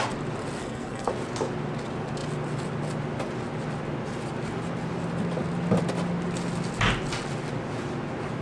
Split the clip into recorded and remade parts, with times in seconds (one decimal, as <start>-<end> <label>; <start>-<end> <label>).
0.0-0.6 recorded; 0.6-1.1 remade; 1.1-8.4 recorded